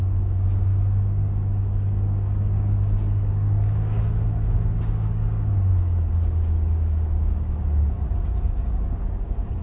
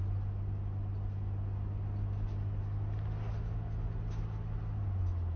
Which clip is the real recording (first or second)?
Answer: second